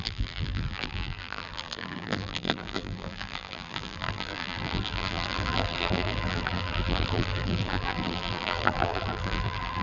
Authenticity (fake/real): fake